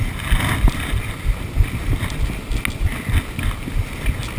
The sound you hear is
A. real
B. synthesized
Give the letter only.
A